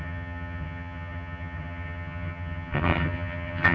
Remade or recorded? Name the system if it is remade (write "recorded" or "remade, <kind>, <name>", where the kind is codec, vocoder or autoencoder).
remade, vocoder, HiFi-GAN